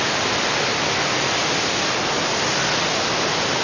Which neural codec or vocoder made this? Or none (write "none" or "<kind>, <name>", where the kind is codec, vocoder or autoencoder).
none